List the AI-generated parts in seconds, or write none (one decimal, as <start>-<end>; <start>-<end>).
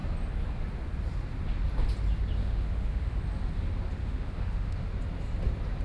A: 2.4-3.2; 4.0-4.9